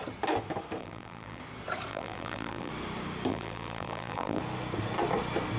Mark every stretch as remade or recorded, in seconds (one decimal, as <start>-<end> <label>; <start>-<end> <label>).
0.0-0.8 recorded; 0.8-1.4 remade; 1.4-1.9 recorded; 1.9-2.7 remade; 2.7-3.3 recorded; 3.3-4.4 remade; 4.4-5.6 recorded